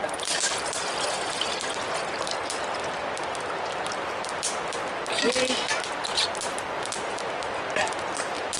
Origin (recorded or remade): recorded